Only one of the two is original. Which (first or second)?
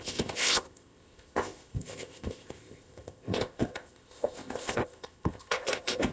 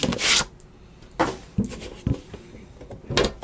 second